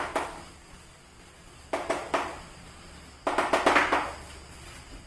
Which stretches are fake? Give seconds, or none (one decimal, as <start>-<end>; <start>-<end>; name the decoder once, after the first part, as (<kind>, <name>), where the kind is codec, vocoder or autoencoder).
none